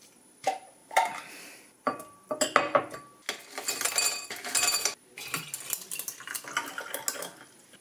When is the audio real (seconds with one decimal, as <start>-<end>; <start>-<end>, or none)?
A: 0.0-0.8; 1.3-7.8